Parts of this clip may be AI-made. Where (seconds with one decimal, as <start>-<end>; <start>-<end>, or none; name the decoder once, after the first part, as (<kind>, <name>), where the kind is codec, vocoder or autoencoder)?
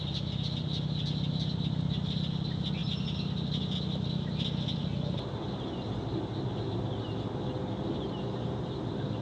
none